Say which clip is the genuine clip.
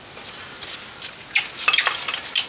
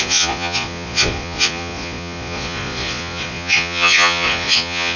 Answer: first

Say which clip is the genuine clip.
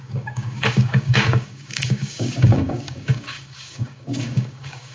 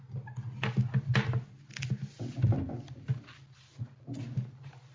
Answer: second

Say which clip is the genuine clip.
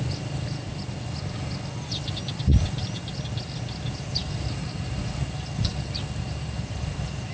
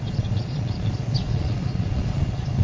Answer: first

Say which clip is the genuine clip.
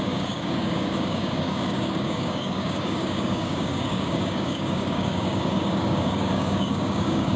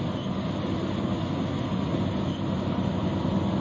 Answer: second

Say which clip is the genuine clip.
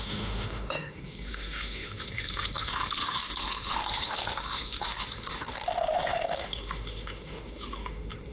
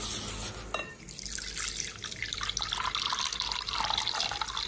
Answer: second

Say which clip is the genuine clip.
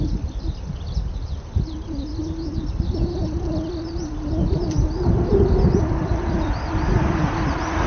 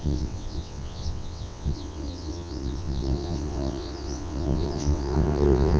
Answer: first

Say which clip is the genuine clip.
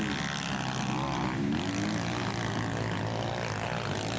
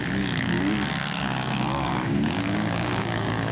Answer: first